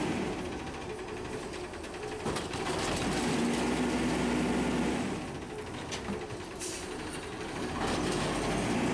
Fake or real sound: real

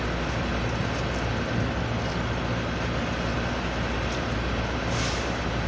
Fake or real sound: real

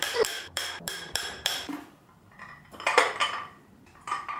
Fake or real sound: fake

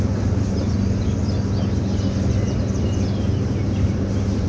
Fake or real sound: real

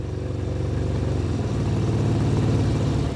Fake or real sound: real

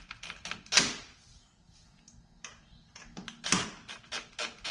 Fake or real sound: real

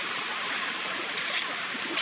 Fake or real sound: fake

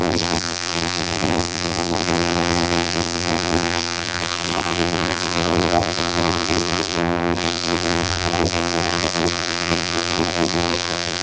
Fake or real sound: fake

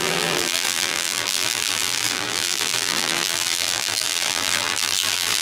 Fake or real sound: fake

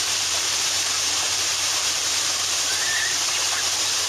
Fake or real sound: fake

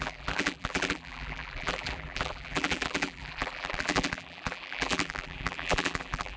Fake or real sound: fake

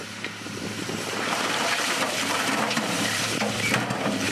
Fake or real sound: fake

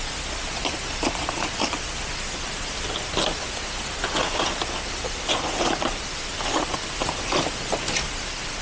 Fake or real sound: fake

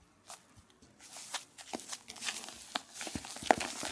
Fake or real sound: real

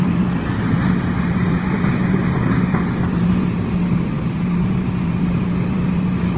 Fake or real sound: fake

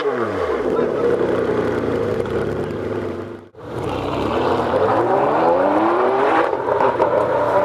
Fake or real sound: fake